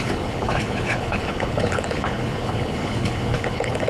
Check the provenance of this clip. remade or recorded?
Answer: remade